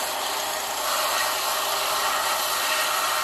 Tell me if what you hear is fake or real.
real